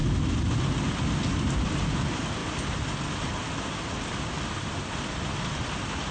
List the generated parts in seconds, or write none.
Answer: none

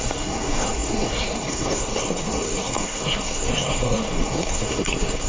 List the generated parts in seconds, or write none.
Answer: 0.0-5.3 (codec, SNAC)

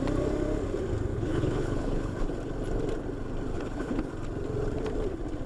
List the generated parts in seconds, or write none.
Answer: 1.1-2.3 (codec, HILCodec); 3.5-4.1

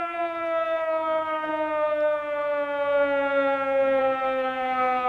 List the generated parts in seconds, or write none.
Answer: 0.0-1.5 (codec, SNAC); 4.0-5.1